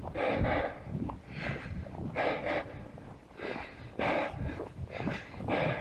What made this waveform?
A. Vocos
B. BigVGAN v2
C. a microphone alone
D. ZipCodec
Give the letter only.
C